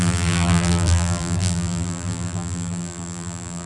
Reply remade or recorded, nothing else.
remade